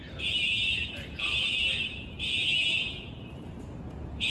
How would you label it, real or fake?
fake